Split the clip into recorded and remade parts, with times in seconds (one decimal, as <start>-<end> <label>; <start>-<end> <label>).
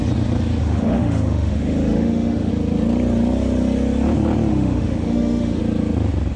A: 0.0-0.6 recorded; 0.6-2.5 remade; 2.5-4.5 recorded; 4.5-5.6 remade; 5.6-6.4 recorded